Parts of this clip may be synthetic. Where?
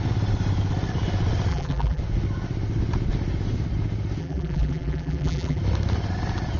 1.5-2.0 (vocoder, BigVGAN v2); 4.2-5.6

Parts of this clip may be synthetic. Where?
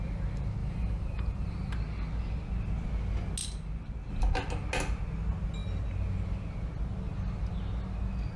0.6-1.7 (vocoder, BigVGAN v2)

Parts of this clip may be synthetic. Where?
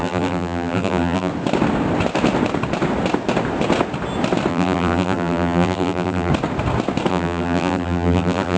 0.0-1.3 (vocoder, BigVGAN v2); 4.5-6.3; 7.1-8.6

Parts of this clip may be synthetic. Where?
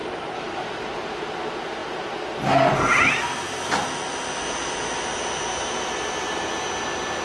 0.0-1.3 (vocoder, BigVGAN v2)